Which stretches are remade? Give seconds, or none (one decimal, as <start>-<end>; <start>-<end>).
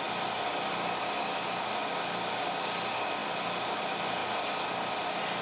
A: none